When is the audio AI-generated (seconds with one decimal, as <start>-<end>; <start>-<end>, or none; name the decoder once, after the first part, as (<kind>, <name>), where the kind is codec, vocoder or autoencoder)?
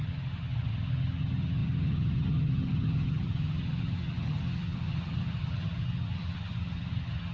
0.0-7.3 (vocoder, HiFi-GAN)